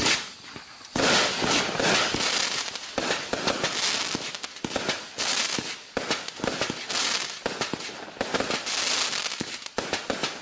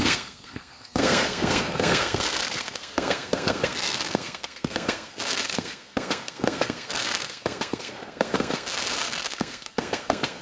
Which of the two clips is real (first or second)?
first